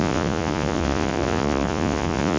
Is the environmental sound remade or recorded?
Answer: remade